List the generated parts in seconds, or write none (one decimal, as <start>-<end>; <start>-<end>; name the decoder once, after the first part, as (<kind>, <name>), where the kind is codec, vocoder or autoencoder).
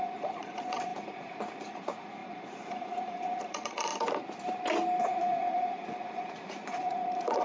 0.0-3.9 (vocoder, Vocos); 5.0-7.4